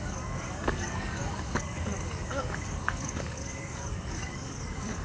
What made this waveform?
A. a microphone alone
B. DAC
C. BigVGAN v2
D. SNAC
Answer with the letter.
B